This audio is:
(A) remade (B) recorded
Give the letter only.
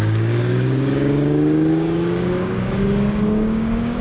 A